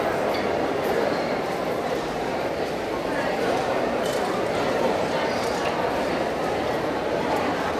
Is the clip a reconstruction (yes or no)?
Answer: yes